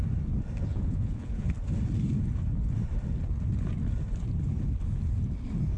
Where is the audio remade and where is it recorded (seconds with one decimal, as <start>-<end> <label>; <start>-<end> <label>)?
0.0-0.7 recorded; 0.7-1.5 remade; 1.5-5.8 recorded